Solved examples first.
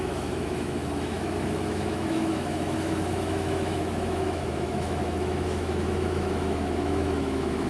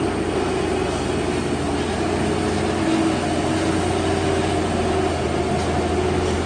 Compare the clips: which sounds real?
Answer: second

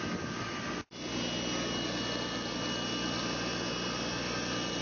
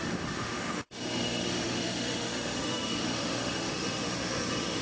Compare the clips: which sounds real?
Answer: first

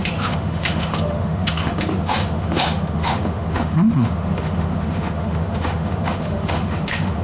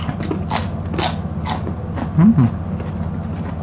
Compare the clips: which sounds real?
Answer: second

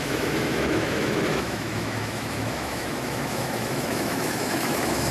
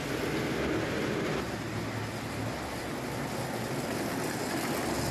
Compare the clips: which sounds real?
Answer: second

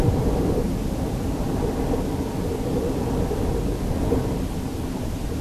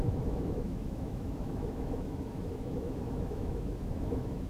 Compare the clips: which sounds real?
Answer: first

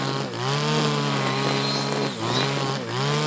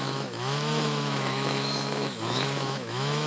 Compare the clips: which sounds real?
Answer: first